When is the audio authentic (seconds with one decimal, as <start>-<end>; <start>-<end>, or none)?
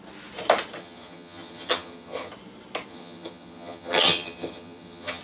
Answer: 0.0-0.8; 2.3-2.9